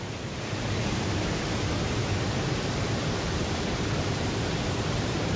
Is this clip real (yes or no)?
no